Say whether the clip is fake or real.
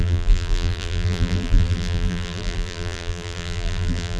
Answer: fake